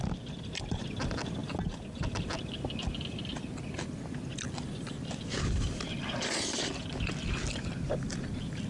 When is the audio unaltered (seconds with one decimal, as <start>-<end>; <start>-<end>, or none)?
1.4-2.0; 3.3-8.7